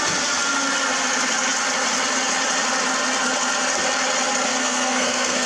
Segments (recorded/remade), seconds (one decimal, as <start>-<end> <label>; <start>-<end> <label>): 0.0-4.5 recorded; 4.5-5.5 remade